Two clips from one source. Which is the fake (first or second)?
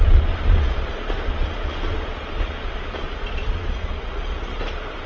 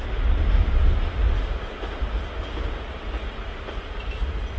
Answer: first